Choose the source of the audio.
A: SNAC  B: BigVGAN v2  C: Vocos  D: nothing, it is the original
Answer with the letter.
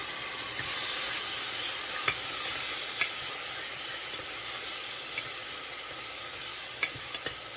D